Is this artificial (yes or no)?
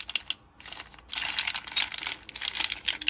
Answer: no